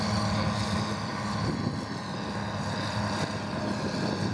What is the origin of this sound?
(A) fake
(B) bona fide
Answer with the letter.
B